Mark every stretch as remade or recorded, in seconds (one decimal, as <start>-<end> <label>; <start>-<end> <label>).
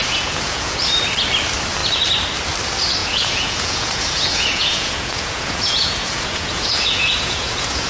0.0-0.8 remade; 0.8-3.0 recorded; 3.0-7.9 remade